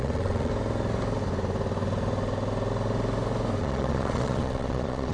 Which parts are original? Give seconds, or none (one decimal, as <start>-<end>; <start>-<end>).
0.5-3.6